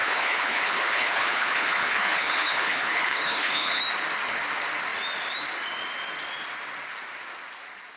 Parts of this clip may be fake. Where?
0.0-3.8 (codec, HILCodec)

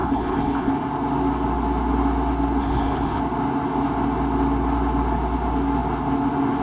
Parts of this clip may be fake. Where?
0.0-0.7 (codec, HILCodec); 2.6-3.2

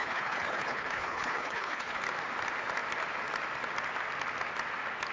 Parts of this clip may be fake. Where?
0.0-2.0 (codec, HILCodec)

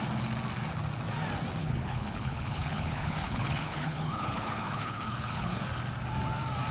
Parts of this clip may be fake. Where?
1.6-5.6 (codec, HILCodec)

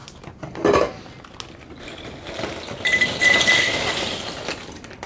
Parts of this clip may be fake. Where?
none